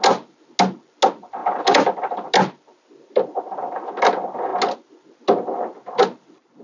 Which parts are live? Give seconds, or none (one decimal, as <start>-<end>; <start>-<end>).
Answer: 0.0-6.6